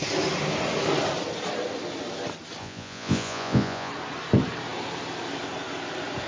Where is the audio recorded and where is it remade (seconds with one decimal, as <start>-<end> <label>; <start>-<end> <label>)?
0.0-2.6 recorded; 2.6-3.9 remade; 3.9-6.3 recorded